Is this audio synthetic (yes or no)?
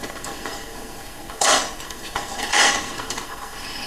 yes